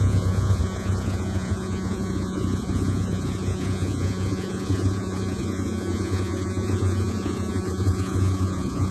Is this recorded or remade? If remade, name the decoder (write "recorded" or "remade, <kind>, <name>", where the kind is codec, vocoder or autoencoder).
remade, vocoder, Vocos